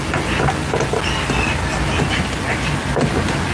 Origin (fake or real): real